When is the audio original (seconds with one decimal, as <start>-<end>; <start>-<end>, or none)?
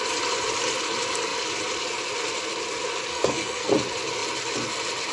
0.0-3.1; 3.7-5.1